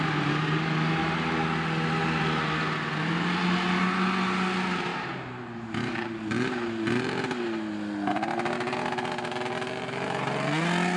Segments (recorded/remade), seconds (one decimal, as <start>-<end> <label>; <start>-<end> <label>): 0.0-4.9 recorded; 4.9-6.0 remade; 6.0-11.0 recorded